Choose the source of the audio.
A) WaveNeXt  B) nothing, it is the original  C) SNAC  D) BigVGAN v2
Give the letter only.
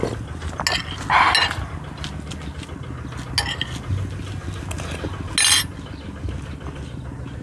B